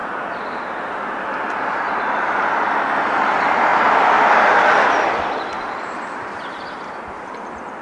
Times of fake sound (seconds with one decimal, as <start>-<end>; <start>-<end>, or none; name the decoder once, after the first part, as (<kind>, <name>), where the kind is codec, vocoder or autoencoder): 0.0-0.9 (vocoder, BigVGAN v2); 5.5-7.1